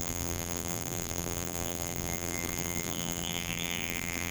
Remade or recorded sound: remade